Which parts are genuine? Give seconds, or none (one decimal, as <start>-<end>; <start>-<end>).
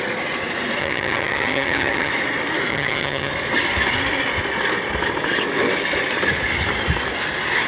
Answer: 0.0-0.8; 2.1-2.7; 3.3-7.7